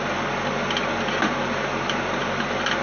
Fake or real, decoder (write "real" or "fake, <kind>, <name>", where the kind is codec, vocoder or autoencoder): real